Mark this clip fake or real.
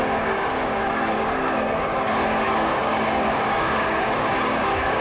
fake